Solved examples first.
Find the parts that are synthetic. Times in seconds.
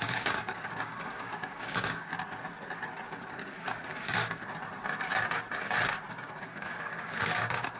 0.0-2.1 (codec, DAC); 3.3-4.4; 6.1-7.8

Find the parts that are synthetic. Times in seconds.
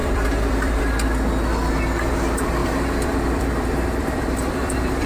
0.0-0.8 (vocoder, BigVGAN v2); 2.6-5.1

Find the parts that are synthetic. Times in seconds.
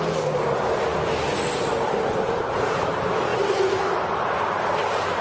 none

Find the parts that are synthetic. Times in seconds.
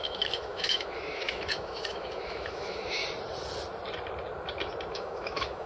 0.0-3.0 (autoencoder, DAC-VAE); 4.9-5.7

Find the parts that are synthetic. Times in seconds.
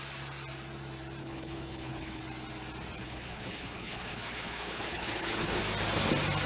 1.2-2.2 (codec, HILCodec); 3.0-5.6